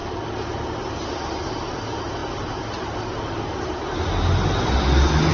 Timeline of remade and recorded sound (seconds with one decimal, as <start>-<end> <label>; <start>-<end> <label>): 0.0-5.3 recorded